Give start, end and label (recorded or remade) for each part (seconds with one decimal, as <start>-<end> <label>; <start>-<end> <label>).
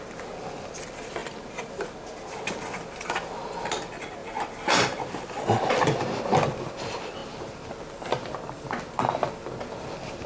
0.0-4.2 recorded; 4.2-6.0 remade; 6.0-10.3 recorded